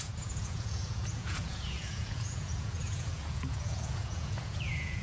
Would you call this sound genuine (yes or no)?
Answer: no